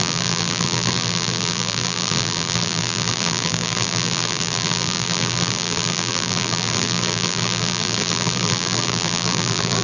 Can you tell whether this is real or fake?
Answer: fake